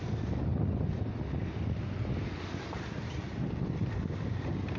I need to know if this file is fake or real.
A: real